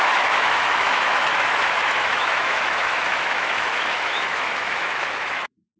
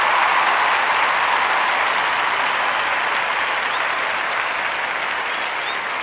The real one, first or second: second